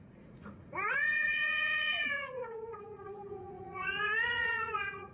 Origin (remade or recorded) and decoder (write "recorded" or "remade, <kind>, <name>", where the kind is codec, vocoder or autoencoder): remade, vocoder, Vocos